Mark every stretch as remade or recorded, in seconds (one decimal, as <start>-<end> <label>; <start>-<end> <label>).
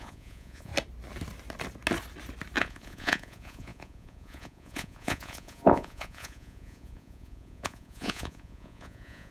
0.0-0.7 remade; 0.7-2.6 recorded; 2.6-9.3 remade